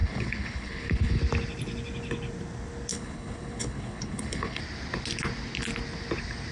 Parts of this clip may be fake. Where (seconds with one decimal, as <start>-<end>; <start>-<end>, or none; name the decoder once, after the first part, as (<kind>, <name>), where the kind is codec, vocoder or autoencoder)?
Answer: 0.0-1.2 (codec, HILCodec); 2.9-4.6